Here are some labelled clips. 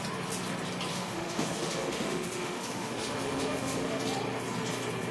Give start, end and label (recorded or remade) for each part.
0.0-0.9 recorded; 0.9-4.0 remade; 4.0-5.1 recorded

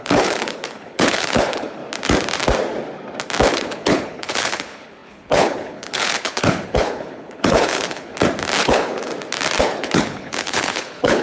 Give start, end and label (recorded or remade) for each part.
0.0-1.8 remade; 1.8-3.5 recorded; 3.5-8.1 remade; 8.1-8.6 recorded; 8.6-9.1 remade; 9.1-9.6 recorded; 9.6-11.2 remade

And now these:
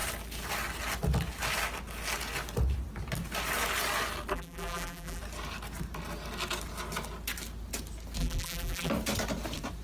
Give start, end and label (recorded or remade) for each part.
0.0-4.3 recorded; 4.3-5.2 remade; 5.2-8.2 recorded; 8.2-8.9 remade; 8.9-9.8 recorded

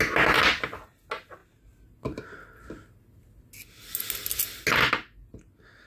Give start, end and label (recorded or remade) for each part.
0.0-5.9 recorded